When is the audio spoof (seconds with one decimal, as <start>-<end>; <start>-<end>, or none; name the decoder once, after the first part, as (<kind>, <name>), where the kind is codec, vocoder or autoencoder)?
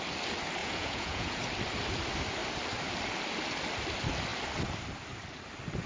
0.6-1.4 (vocoder, Vocos)